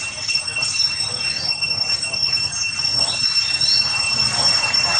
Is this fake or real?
real